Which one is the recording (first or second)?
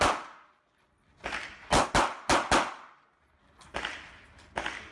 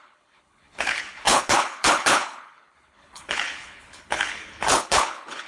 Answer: first